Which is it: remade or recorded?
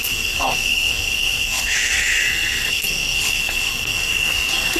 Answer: remade